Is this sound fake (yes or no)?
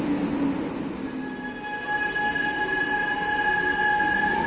no